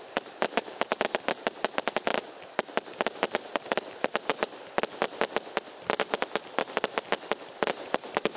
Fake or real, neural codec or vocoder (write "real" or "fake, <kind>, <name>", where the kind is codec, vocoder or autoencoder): real